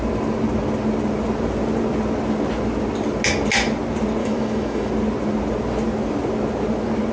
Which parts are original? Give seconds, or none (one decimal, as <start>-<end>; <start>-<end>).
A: 0.0-4.2; 4.9-7.1